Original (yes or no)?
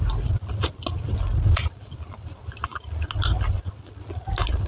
yes